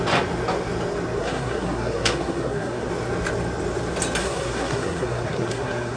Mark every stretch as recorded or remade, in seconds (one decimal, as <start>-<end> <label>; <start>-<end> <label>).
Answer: 0.0-1.2 recorded; 1.2-2.9 remade; 2.9-4.2 recorded; 4.2-6.0 remade